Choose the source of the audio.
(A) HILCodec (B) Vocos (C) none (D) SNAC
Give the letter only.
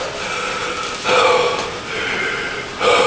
C